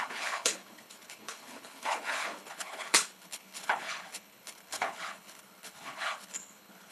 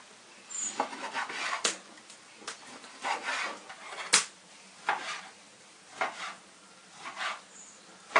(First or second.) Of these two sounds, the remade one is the first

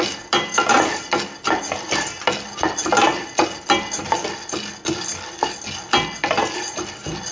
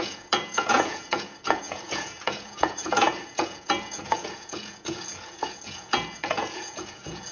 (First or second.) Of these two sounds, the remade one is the second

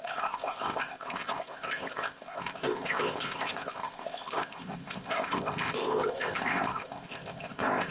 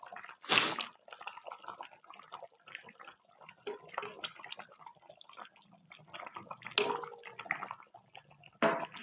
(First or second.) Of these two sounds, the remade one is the first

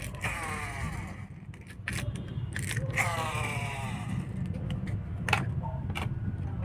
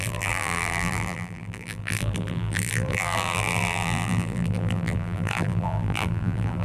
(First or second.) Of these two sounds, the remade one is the second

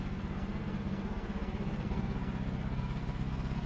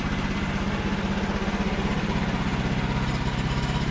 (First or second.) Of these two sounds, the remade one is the first